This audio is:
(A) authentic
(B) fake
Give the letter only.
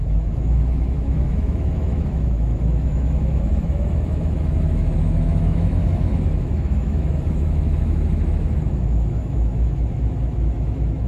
B